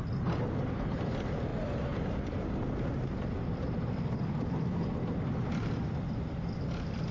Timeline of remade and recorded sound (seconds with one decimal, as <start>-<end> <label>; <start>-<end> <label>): 0.0-7.1 recorded